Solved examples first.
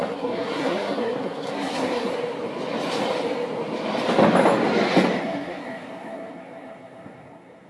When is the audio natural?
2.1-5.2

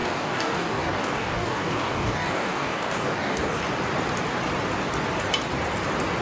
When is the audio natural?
3.6-6.2

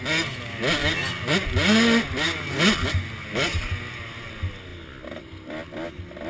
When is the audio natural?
0.0-6.3

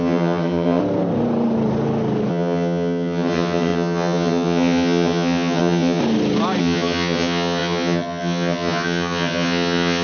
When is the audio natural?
0.8-2.3; 6.0-6.6

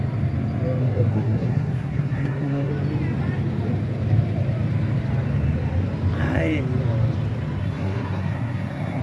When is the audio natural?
0.0-0.8; 2.7-7.6